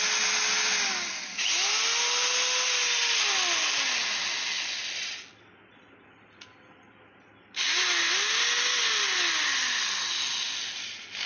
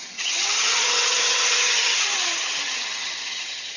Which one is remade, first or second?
second